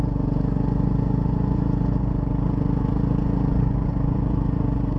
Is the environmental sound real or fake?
fake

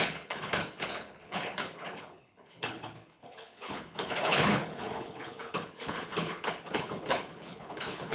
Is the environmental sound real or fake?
fake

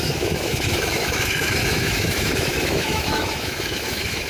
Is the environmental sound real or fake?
fake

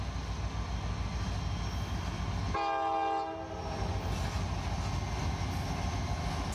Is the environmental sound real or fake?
real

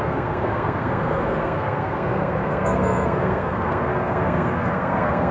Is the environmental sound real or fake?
fake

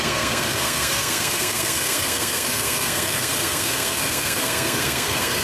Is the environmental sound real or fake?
fake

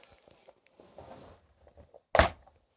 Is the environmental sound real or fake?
real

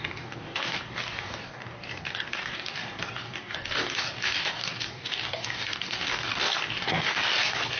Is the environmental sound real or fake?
fake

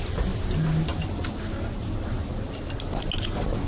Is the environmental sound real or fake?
real